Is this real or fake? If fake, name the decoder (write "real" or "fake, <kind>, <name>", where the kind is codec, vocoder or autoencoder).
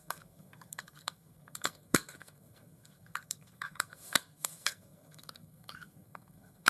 fake, codec, SNAC